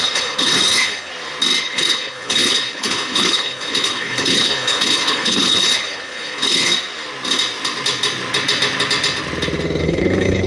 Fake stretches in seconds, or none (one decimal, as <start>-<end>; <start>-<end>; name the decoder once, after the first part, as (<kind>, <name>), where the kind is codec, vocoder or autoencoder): 0.0-1.1 (codec, HILCodec); 1.6-6.7; 9.8-10.5